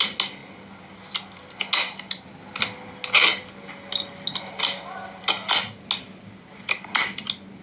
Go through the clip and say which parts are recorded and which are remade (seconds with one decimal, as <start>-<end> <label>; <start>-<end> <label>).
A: 0.0-7.6 recorded